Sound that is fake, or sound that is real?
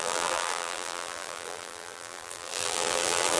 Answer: fake